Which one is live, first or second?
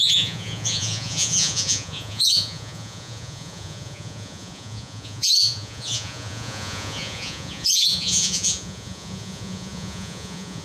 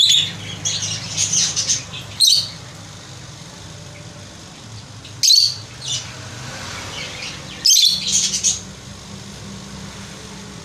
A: second